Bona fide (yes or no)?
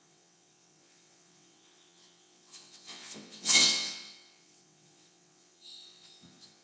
no